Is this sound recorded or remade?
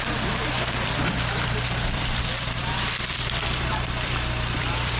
remade